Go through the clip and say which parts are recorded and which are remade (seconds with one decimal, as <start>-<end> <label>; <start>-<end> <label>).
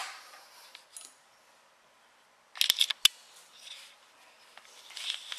0.0-5.4 recorded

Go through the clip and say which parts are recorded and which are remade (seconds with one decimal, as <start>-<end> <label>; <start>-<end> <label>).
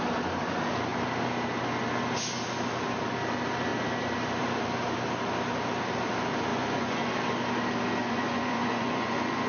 0.0-6.5 recorded; 6.5-7.1 remade; 7.1-8.0 recorded; 8.0-9.5 remade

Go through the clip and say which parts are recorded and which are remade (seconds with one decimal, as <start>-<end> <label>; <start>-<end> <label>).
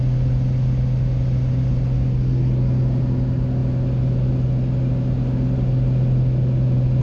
0.0-7.0 recorded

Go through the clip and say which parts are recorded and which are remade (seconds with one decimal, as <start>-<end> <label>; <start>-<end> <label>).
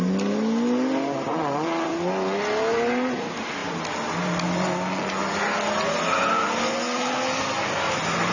0.0-1.3 recorded; 1.3-1.9 remade; 1.9-8.3 recorded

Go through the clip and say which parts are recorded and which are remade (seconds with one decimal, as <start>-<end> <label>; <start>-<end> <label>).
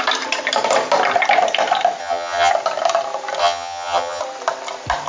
0.0-2.0 recorded; 2.0-2.5 remade; 2.5-3.4 recorded; 3.4-4.2 remade; 4.2-5.1 recorded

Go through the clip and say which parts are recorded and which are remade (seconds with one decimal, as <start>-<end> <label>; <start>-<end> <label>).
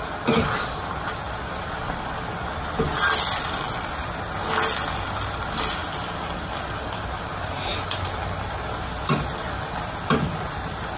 0.0-11.0 recorded